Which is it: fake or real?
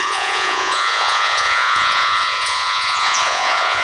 fake